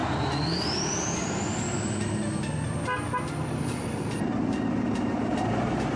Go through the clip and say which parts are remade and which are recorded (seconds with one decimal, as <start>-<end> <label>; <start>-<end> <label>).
0.0-6.0 recorded